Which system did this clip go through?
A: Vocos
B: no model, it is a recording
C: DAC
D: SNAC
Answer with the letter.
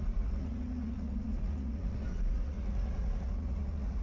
A